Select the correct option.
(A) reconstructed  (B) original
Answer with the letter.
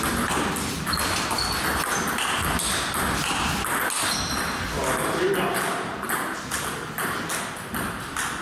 B